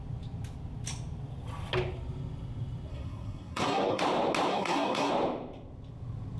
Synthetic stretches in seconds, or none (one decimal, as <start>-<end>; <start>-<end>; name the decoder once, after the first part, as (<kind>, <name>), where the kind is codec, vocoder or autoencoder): 2.9-4.0 (codec, SNAC); 4.5-5.1